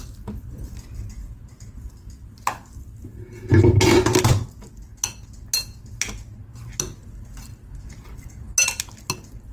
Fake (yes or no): no